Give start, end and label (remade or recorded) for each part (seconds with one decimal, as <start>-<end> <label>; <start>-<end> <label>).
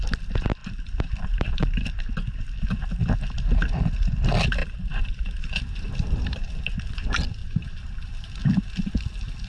0.0-0.6 recorded; 0.6-1.6 remade; 1.6-4.6 recorded; 4.6-6.6 remade; 6.6-7.4 recorded; 7.4-8.9 remade; 8.9-9.5 recorded